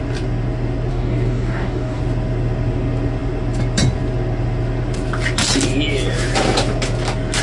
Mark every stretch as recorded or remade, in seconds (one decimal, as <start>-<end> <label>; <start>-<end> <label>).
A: 0.0-0.9 recorded; 0.9-2.0 remade; 2.0-7.4 recorded